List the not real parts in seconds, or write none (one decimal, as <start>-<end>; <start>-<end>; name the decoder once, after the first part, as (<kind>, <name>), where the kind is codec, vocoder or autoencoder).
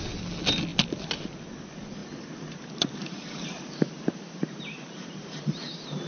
2.0-6.1 (vocoder, BigVGAN v2)